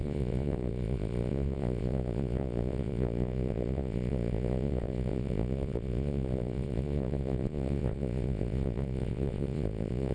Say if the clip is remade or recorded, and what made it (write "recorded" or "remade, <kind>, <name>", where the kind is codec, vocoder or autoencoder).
remade, vocoder, Vocos